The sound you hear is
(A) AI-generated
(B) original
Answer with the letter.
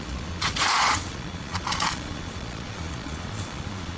A